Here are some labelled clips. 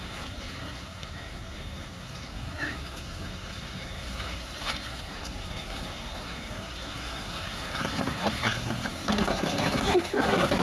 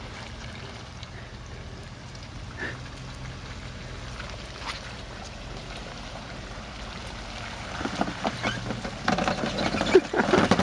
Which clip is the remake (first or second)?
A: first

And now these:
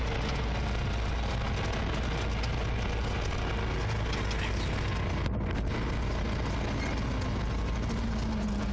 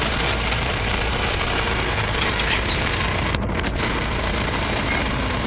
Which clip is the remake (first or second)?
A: second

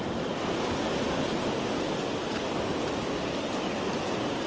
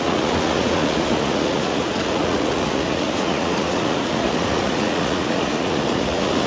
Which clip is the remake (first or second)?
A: second